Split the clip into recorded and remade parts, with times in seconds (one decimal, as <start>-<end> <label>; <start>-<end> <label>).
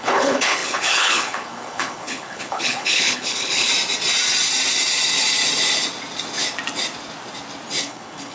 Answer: 0.0-3.7 remade; 3.7-7.8 recorded; 7.8-8.3 remade